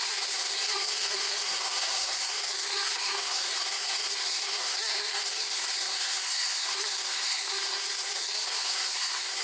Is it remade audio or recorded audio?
remade